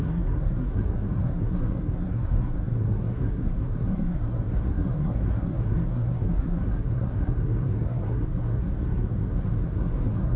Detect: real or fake fake